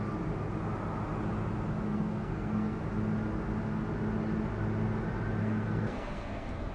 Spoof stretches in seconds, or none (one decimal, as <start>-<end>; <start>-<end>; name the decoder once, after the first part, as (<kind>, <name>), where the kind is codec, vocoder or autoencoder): 1.9-2.8 (codec, SNAC); 5.4-6.7